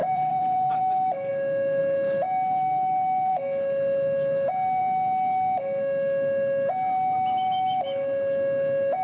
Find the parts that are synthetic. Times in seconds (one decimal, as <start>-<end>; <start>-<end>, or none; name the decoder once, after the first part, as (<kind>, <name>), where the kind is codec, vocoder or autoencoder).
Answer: 0.0-0.8 (vocoder, BigVGAN v2)